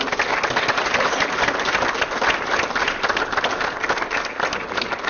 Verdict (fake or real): real